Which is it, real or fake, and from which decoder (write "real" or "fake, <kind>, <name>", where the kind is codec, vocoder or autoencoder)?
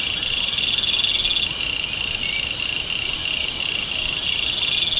real